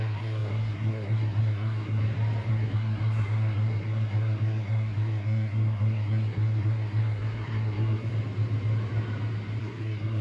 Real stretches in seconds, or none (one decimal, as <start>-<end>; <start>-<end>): 2.0-2.5; 8.1-9.6